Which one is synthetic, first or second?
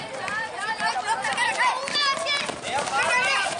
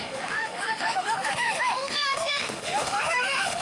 second